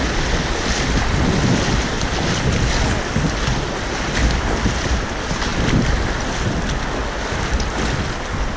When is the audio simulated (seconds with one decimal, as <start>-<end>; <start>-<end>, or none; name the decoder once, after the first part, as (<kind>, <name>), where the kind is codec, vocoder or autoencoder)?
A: none